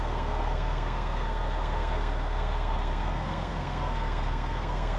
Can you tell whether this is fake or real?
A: fake